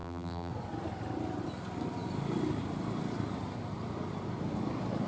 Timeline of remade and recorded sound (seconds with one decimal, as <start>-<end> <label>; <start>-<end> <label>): 0.0-0.5 remade; 0.5-5.1 recorded